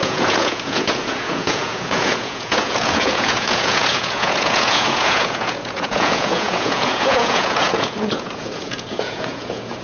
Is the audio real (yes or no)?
no